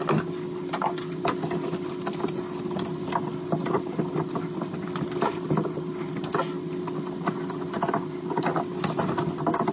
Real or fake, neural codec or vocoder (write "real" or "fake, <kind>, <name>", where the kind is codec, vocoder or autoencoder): real